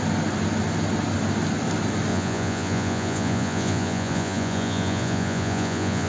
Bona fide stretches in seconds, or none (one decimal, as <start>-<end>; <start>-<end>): 0.0-2.1